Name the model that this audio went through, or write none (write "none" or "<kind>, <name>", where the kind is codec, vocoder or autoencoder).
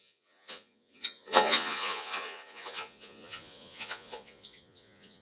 vocoder, Vocos